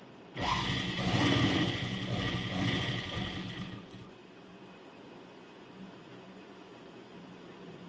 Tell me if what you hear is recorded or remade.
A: remade